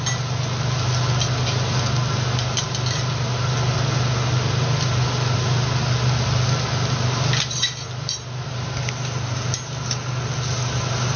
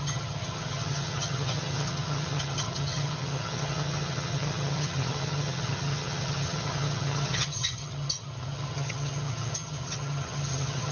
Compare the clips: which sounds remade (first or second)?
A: second